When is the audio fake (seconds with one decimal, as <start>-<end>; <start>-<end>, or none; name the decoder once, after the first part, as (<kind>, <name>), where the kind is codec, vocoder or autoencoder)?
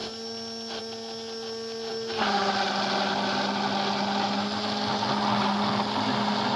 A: none